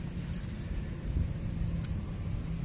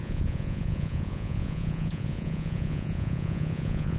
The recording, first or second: first